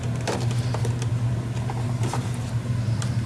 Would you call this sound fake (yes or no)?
no